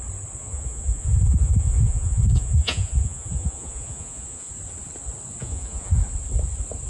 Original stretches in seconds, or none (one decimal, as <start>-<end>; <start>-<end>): 0.0-0.4; 4.5-5.4; 5.9-6.9